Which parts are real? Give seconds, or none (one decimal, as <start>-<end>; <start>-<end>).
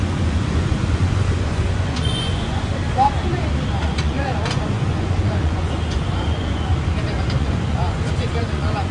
2.7-3.8; 6.7-7.4